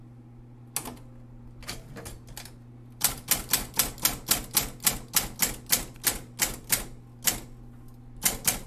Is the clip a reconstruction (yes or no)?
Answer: no